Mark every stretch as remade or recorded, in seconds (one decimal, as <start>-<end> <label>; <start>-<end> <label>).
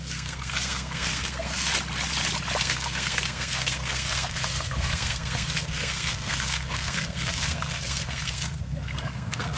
0.0-1.7 remade; 1.7-2.6 recorded; 2.6-9.6 remade